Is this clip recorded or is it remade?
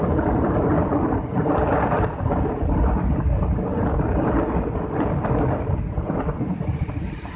remade